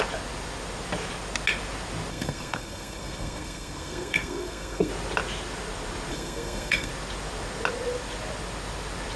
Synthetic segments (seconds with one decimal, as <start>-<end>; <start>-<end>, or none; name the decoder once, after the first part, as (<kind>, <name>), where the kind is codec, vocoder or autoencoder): 2.1-4.9 (codec, SNAC); 6.1-6.9